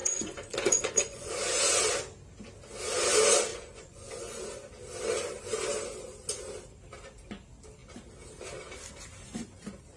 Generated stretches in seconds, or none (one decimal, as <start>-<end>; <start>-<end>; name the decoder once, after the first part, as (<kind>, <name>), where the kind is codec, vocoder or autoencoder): 0.0-1.3 (vocoder, Vocos); 3.5-4.4